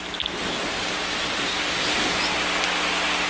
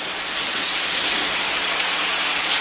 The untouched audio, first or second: first